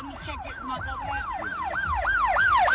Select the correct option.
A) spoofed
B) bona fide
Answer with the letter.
B